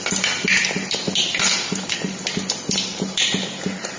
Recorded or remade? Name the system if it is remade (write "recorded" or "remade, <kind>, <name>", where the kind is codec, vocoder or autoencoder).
recorded